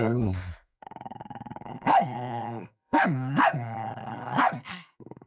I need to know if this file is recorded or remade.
remade